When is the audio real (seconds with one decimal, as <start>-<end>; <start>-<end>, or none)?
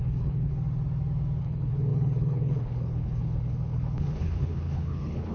0.5-1.4